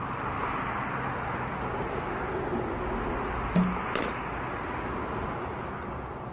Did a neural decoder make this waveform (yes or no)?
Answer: no